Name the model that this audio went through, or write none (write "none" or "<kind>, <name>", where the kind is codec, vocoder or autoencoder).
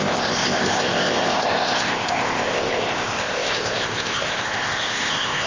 codec, ZipCodec